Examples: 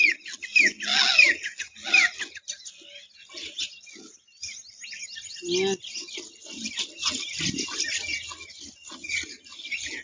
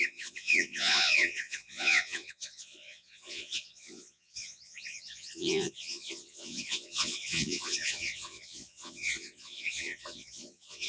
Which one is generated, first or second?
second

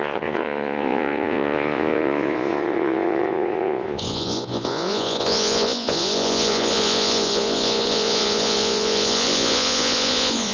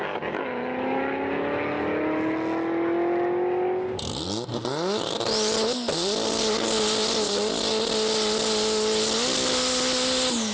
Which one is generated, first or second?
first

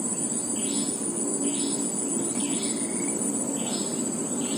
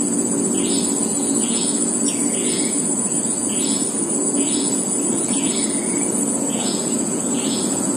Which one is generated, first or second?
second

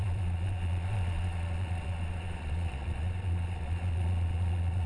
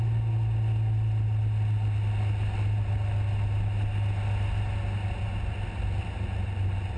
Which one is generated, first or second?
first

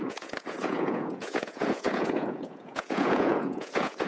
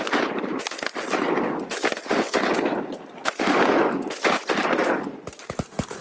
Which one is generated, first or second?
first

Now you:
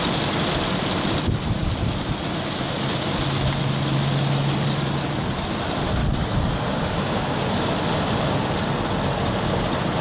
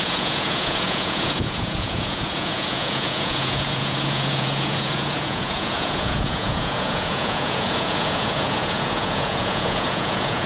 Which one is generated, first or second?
second